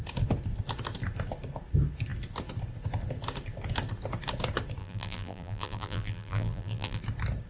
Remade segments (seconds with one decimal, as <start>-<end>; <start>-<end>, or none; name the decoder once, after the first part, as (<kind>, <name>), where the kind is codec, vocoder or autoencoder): 4.8-7.0 (vocoder, BigVGAN v2)